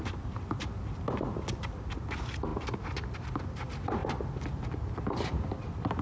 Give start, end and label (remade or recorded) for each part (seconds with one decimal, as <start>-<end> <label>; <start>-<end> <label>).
0.0-6.0 recorded